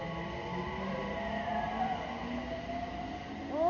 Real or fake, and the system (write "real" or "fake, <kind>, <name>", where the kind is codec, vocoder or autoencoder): real